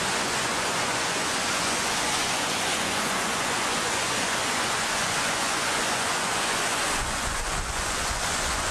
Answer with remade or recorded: remade